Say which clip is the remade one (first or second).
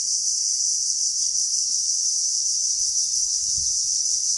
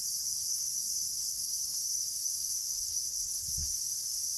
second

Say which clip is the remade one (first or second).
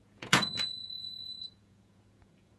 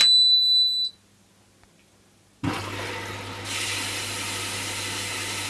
first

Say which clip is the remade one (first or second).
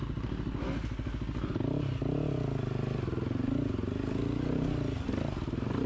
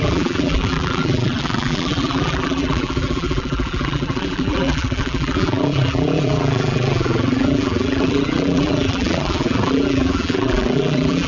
second